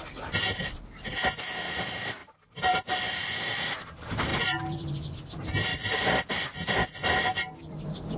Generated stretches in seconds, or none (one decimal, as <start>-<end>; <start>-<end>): 2.2-3.6; 4.3-5.0; 5.7-6.3